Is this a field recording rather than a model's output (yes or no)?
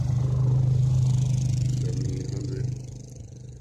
yes